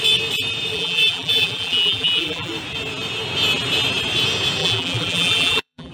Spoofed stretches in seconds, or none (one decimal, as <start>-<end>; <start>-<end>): 0.7-2.5; 4.6-5.9